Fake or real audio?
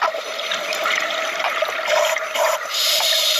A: real